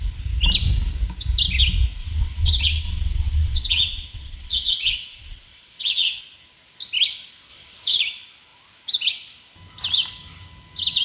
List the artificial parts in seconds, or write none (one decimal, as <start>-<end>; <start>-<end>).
2.0-6.2; 7.5-8.0